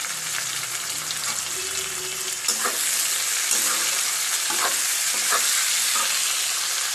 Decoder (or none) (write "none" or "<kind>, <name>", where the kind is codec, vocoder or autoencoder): none